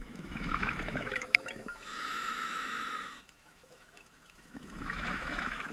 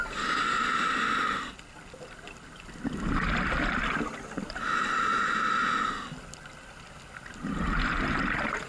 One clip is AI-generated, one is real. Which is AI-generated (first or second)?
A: first